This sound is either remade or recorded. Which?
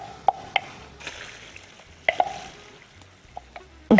recorded